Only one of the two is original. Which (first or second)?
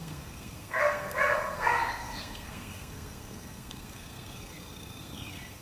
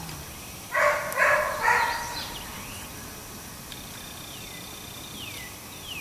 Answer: second